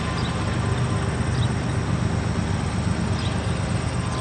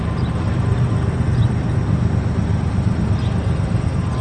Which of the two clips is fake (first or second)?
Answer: second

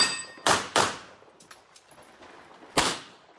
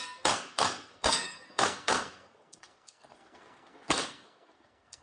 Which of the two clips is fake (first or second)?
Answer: second